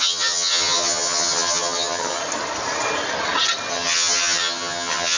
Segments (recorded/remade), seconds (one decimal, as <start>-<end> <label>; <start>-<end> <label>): 0.0-2.2 remade; 2.2-3.7 recorded; 3.7-5.2 remade